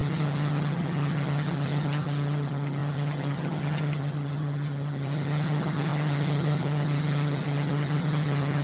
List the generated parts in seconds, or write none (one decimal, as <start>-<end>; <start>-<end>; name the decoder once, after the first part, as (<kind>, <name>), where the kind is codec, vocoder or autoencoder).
0.0-8.6 (vocoder, HiFi-GAN)